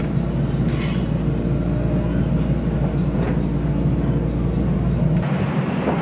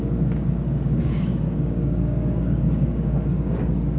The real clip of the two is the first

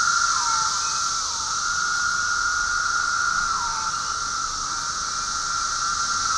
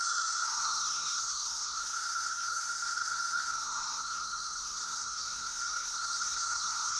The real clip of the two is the first